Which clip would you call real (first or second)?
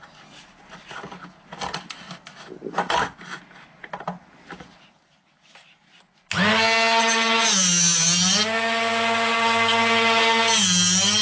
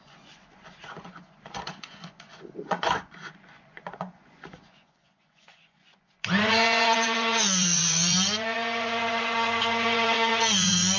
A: first